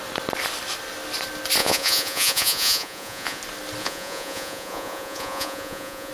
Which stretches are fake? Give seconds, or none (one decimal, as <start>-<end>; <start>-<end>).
1.6-3.4; 3.8-6.1